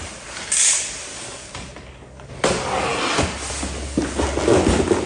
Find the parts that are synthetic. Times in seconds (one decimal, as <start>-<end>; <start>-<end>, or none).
1.1-2.3